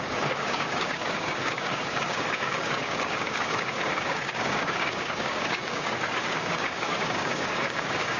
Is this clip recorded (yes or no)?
no